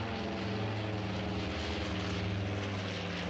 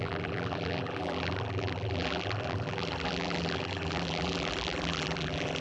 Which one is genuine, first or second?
first